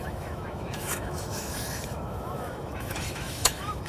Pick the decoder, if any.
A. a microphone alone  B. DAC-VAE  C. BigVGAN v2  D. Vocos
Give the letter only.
B